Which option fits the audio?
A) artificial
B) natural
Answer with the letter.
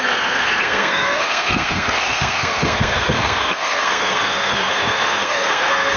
A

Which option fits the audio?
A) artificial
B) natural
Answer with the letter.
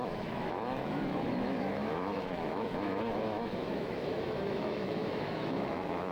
A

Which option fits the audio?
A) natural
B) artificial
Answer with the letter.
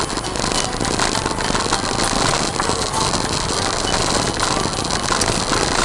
A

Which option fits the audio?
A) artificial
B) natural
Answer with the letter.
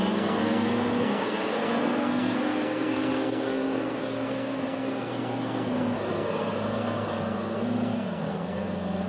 A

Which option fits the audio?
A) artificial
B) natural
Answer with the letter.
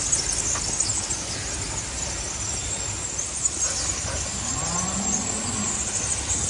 B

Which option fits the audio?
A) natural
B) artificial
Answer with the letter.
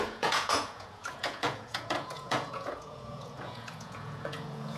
B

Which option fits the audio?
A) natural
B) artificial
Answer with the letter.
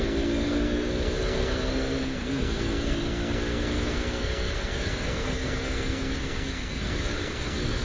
B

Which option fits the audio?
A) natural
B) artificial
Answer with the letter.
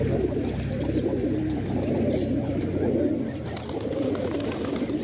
A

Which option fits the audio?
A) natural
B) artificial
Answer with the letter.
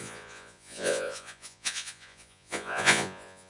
B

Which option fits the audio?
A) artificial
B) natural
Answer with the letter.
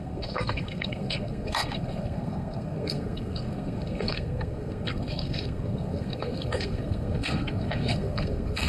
A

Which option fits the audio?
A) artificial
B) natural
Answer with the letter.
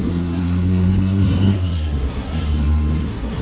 A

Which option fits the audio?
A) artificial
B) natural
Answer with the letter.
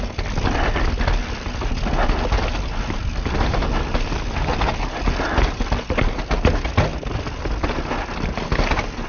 B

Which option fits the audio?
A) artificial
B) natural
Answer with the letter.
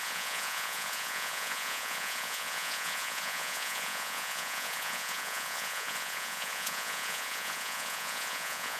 A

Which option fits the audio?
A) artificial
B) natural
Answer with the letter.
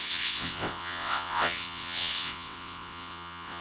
A